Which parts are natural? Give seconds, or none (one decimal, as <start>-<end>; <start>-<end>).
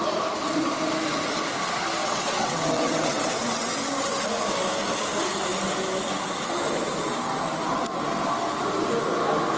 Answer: 0.0-2.0; 3.6-9.6